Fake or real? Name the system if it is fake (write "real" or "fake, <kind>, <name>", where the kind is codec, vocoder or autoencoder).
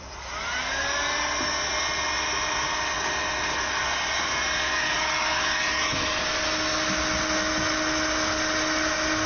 real